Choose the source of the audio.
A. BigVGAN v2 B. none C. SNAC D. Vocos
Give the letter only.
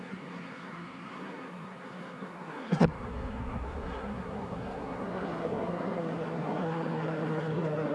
C